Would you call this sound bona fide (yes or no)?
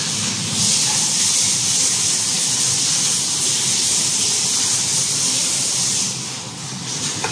yes